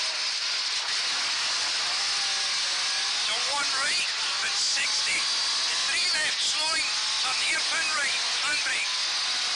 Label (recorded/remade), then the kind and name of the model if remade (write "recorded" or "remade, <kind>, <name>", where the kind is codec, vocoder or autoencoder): recorded